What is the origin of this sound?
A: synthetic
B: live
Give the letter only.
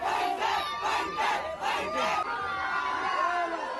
B